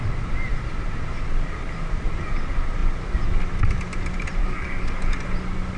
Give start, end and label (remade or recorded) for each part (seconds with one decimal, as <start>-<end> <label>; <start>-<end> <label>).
0.0-4.4 recorded; 4.4-4.9 remade; 4.9-5.8 recorded